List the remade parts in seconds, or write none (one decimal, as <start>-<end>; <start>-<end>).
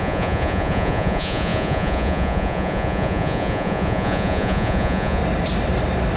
0.0-5.2